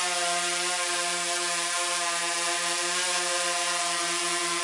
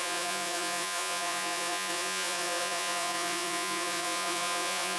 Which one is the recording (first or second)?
first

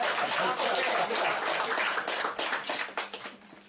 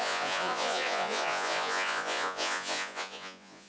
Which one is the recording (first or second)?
first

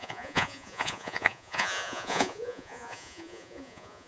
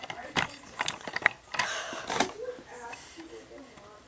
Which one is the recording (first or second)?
second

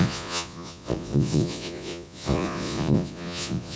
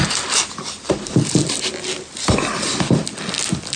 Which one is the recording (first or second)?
second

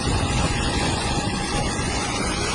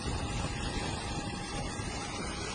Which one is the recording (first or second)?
second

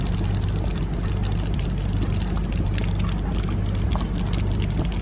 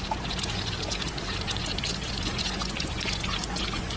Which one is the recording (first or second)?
first